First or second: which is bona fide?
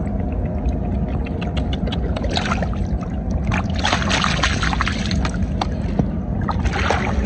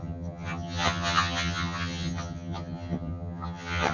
first